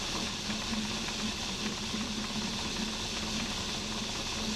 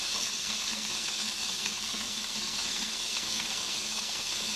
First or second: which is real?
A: first